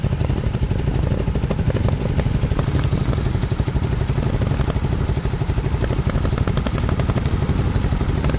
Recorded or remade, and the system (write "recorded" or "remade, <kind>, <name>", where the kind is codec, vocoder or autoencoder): recorded